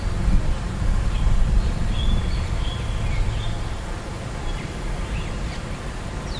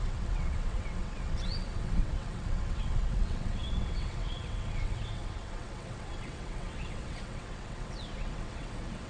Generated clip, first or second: second